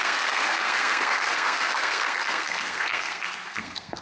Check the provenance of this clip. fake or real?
fake